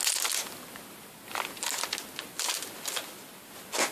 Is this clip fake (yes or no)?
no